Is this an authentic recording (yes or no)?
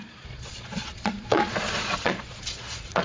no